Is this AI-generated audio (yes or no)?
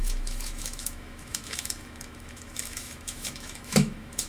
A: yes